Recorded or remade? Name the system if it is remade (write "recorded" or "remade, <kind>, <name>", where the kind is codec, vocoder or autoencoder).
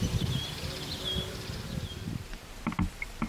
remade, vocoder, BigVGAN v2